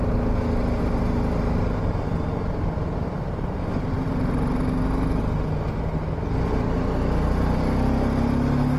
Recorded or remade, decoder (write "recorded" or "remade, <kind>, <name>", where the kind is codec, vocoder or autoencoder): recorded